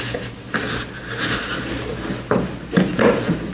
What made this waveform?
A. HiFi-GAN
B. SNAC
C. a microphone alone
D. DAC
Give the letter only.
C